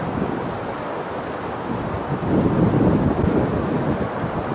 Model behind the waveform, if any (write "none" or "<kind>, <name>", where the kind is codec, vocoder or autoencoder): none